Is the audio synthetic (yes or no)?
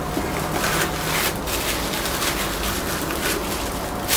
no